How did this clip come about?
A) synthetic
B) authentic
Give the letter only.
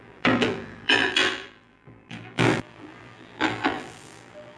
A